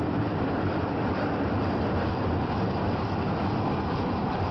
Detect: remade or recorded remade